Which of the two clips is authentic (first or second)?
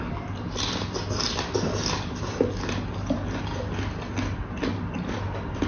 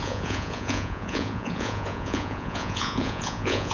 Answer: first